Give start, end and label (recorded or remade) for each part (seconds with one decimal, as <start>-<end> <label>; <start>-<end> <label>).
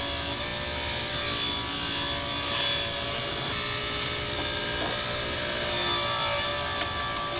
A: 0.0-7.4 recorded